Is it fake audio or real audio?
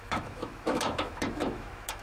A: fake